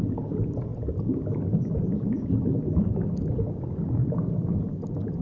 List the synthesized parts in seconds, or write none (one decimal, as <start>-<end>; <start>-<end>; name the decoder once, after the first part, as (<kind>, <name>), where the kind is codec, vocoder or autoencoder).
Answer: none